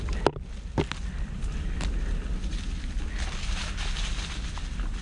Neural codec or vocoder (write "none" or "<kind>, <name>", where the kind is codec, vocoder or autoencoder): none